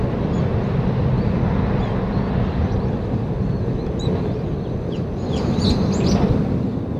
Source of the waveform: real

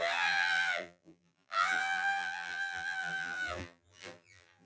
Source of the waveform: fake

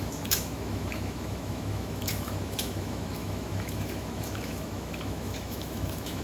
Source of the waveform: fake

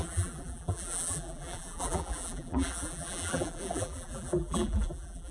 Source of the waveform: fake